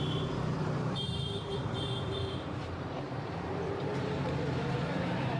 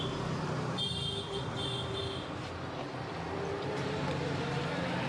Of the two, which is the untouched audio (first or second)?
second